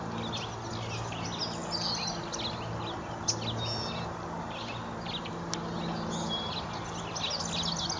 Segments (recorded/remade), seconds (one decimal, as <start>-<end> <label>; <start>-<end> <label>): 0.0-8.0 recorded